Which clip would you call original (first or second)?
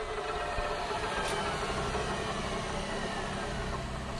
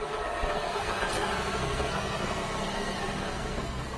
first